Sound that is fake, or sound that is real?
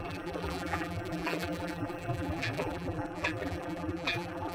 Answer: fake